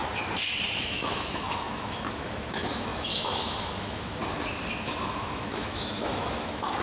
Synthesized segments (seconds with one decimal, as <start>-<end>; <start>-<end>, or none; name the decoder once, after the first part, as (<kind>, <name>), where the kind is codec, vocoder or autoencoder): 0.8-4.2 (autoencoder, DAC-VAE); 4.8-6.8